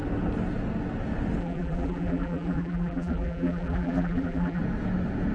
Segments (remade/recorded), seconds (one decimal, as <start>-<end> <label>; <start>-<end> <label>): 0.0-1.4 recorded; 1.4-4.6 remade; 4.6-5.3 recorded